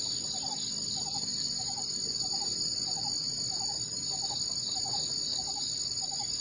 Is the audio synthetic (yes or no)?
no